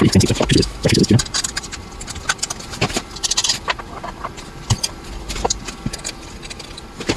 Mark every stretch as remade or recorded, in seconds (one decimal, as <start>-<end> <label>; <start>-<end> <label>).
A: 0.0-0.5 recorded; 0.5-1.0 remade; 1.0-7.2 recorded